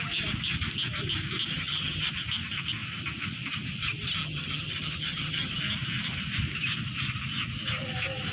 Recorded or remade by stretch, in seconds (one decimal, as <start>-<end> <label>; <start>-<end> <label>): 0.0-1.5 recorded; 1.5-2.1 remade; 2.1-4.2 recorded; 4.2-5.6 remade; 5.6-8.3 recorded